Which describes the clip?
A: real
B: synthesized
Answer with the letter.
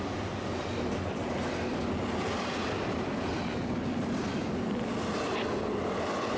A